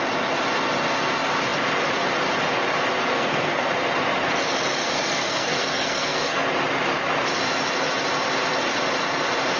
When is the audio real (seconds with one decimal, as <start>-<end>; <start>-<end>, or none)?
0.0-3.1; 3.7-4.8; 6.4-9.6